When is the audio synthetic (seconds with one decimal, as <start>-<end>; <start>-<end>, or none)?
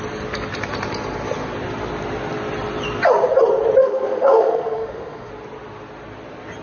3.8-5.3